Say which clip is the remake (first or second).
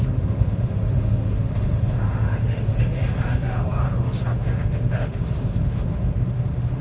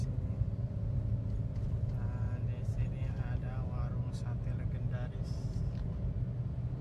first